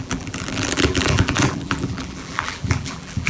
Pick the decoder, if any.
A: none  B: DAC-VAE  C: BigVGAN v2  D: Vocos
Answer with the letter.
C